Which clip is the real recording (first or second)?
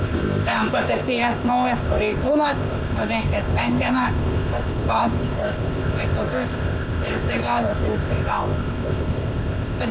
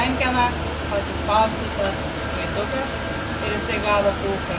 second